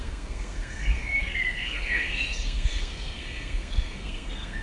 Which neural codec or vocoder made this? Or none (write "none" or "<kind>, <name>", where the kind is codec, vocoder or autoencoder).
codec, SNAC